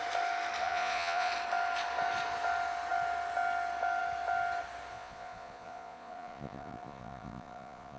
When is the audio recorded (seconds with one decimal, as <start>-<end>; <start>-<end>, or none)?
0.0-0.6; 1.3-4.9